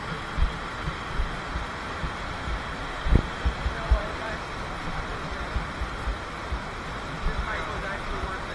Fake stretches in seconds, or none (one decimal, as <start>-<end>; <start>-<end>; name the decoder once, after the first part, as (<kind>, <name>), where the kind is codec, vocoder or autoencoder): 0.7-5.5 (vocoder, BigVGAN v2); 6.1-6.8